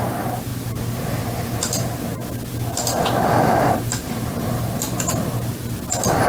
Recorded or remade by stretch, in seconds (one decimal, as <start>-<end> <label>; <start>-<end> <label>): 0.0-6.3 recorded